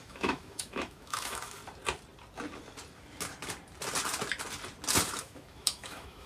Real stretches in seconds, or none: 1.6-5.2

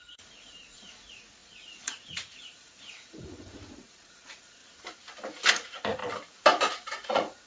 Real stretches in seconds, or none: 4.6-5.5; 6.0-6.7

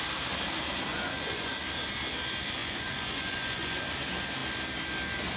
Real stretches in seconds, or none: 0.0-0.9; 1.5-2.6; 3.8-5.4

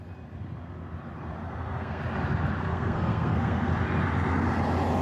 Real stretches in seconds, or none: 0.0-1.4; 2.0-2.7; 3.7-5.0